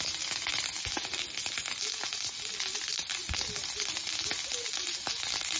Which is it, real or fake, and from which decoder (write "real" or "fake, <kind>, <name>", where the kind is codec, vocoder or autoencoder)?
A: real